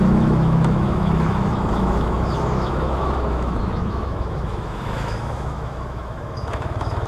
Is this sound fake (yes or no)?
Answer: yes